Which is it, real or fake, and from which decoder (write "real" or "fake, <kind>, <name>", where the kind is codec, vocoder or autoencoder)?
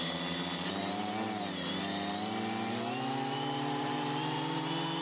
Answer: fake, vocoder, BigVGAN v2